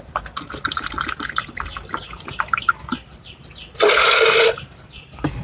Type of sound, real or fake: real